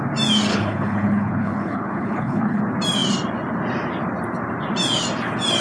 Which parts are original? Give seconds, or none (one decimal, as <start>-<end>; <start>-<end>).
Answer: 0.0-0.5; 2.6-5.6